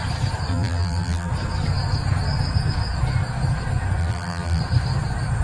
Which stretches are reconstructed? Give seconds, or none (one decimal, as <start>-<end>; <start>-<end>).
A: 0.5-1.3; 4.0-4.6